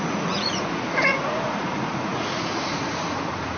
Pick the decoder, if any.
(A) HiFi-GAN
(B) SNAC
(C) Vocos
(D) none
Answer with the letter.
C